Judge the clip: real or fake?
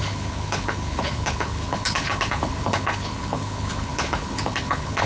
fake